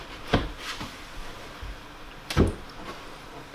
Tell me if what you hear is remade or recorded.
recorded